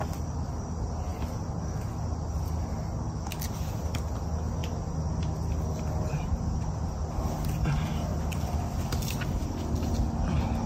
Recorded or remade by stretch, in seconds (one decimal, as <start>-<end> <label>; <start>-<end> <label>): 0.0-10.7 recorded